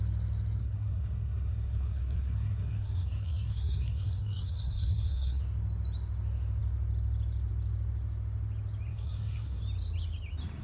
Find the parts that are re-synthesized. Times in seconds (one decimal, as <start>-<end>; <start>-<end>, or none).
0.6-5.4; 8.9-9.6